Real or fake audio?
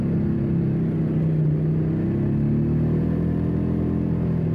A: real